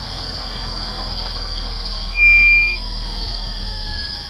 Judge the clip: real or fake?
fake